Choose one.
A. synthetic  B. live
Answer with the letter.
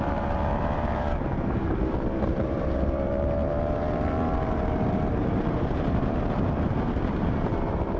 A